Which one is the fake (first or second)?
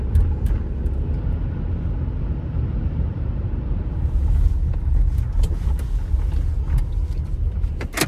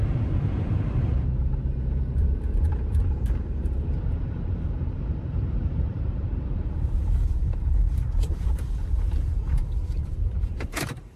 second